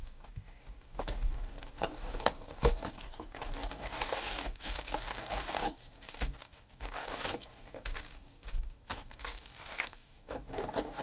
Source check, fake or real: fake